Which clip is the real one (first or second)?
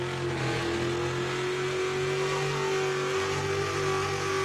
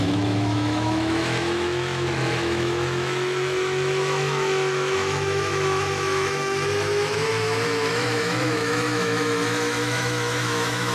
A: first